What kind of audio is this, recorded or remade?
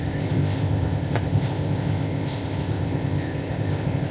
remade